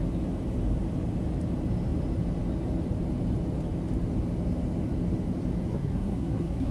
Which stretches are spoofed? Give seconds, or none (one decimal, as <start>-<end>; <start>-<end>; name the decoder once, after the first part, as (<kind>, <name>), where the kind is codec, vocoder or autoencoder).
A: 5.7-6.7 (codec, SNAC)